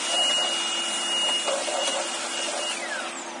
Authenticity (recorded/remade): recorded